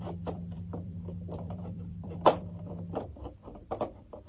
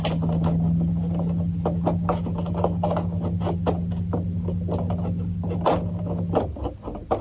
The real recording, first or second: second